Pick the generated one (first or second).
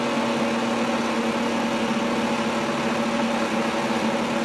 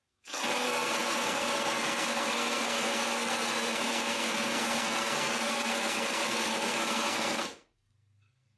second